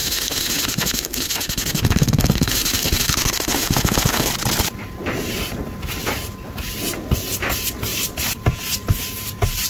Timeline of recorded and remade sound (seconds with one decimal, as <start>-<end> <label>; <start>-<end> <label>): 0.0-4.3 remade; 4.3-9.7 recorded